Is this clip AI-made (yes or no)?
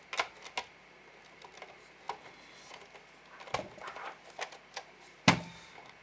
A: no